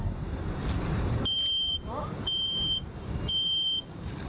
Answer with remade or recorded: remade